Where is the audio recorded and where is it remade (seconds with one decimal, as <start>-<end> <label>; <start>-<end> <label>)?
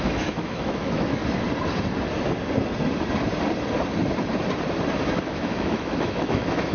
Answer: 0.0-1.2 remade; 1.2-5.2 recorded; 5.2-6.7 remade